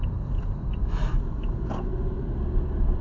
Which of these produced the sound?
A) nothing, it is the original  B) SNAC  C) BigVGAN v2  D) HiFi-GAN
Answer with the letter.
A